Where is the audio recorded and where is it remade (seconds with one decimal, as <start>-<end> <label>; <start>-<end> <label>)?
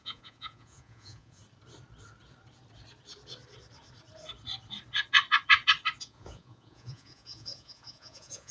0.0-1.4 remade; 1.4-6.0 recorded; 6.0-8.5 remade